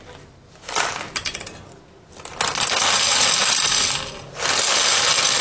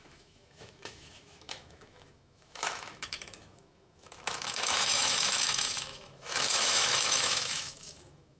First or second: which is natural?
first